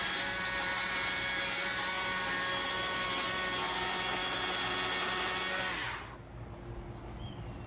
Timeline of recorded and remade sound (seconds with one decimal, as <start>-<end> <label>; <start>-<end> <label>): 0.0-7.7 recorded